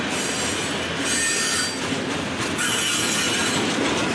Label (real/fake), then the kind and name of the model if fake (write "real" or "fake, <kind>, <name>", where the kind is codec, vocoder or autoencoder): real